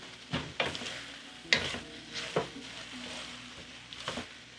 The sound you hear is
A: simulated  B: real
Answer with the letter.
B